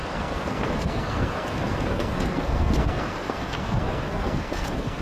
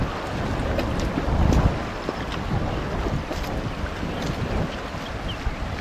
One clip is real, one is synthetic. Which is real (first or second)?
second